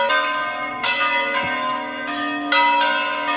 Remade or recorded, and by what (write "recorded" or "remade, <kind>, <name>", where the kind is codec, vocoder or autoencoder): recorded